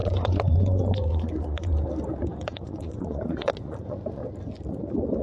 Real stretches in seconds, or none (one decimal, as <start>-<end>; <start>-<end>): 1.7-2.3; 4.2-5.2